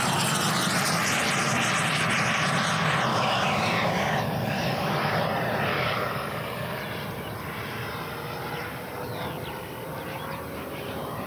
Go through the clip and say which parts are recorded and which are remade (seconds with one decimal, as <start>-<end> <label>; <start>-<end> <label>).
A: 0.0-3.1 recorded; 3.1-5.2 remade; 5.2-5.7 recorded; 5.7-6.8 remade; 6.8-11.3 recorded